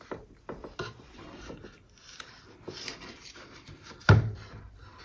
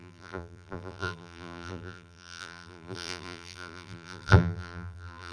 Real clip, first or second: first